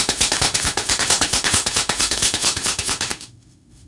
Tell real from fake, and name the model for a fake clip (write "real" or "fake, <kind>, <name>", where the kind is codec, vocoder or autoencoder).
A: fake, autoencoder, DAC-VAE